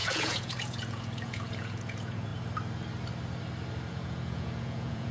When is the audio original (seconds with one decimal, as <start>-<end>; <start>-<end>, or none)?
2.3-3.9